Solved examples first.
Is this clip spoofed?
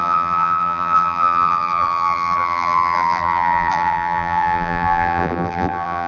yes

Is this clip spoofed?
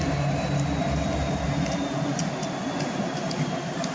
no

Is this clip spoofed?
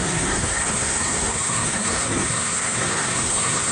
yes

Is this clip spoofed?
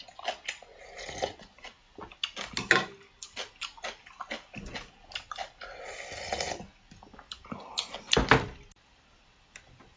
no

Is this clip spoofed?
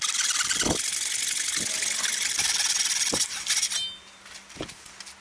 no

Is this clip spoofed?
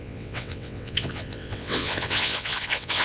yes